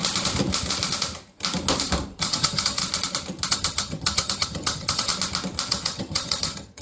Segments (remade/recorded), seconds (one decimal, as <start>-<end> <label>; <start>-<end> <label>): 0.0-2.2 recorded; 2.2-2.8 remade; 2.8-3.5 recorded; 3.5-5.1 remade; 5.1-5.7 recorded; 5.7-6.8 remade